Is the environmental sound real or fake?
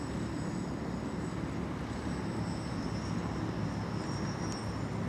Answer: real